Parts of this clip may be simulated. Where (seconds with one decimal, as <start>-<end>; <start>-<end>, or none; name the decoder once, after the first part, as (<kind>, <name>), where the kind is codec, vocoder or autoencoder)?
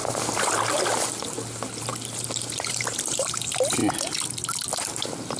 0.0-0.6 (vocoder, BigVGAN v2); 1.9-3.4